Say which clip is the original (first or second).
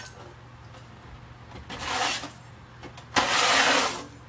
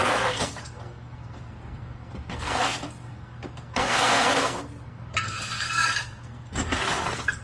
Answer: first